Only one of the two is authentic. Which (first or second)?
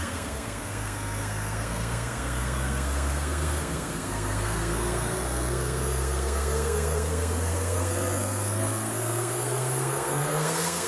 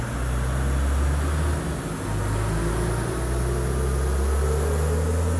second